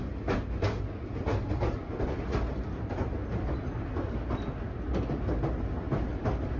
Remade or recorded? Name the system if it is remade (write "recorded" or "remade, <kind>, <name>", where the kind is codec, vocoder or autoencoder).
recorded